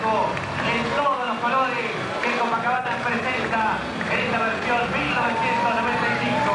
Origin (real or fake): real